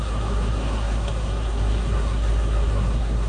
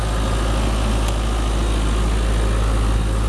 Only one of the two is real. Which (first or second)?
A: second